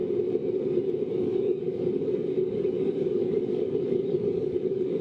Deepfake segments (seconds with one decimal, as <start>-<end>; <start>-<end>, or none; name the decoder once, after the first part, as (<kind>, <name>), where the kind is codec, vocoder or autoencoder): 1.1-5.0 (codec, DAC)